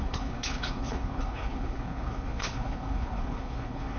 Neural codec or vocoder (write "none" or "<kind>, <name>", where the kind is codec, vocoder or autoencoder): codec, HILCodec